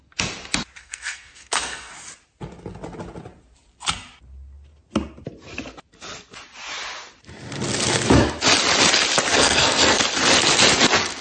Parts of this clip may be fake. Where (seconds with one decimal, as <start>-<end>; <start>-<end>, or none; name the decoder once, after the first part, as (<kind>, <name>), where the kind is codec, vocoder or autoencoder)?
0.8-1.9 (codec, SNAC); 9.3-10.0